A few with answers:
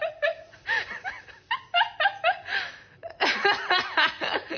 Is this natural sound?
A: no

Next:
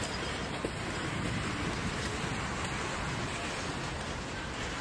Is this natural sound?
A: yes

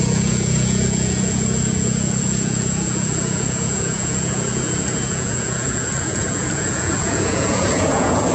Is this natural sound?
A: no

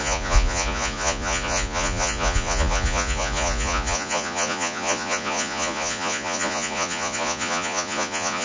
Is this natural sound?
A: no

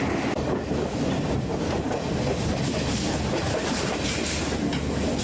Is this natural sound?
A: yes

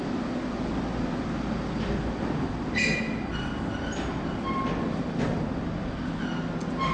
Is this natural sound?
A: yes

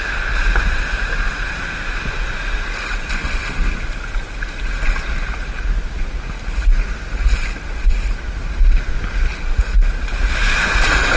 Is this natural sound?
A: yes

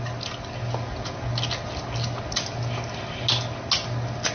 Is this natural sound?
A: yes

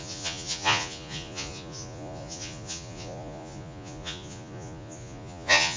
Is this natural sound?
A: no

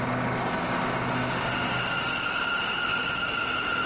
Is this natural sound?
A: yes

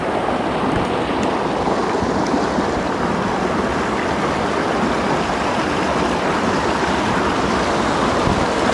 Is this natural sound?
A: yes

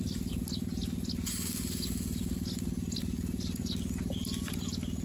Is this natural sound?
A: yes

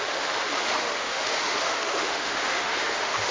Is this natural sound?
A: no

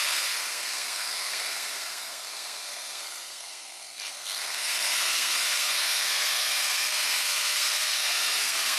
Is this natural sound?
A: no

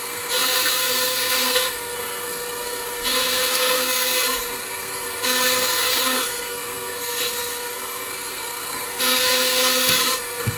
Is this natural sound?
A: no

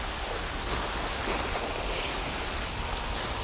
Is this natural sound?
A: yes